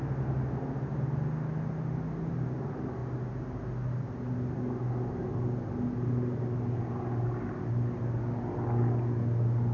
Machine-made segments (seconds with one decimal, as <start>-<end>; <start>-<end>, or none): none